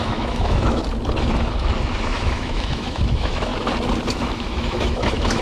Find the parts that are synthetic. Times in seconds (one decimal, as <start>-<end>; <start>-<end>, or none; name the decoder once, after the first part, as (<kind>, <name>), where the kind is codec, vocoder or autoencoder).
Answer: 0.0-0.8 (autoencoder, DAC-VAE); 2.0-3.5; 4.1-5.4